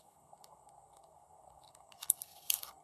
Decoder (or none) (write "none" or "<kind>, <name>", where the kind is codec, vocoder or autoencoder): codec, SNAC